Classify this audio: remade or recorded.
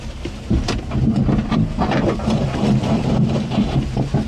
remade